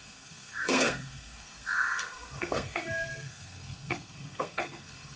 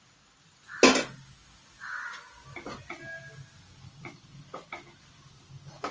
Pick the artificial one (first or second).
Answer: first